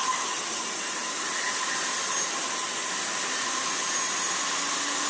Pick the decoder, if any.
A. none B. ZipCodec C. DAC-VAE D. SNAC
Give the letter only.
A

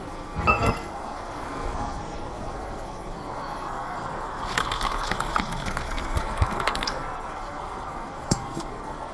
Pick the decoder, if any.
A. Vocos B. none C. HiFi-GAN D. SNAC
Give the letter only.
D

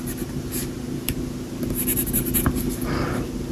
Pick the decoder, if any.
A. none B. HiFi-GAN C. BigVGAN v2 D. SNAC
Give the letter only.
A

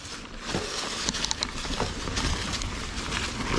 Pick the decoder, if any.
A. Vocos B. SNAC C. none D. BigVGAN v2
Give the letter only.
C